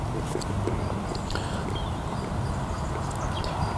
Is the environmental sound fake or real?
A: real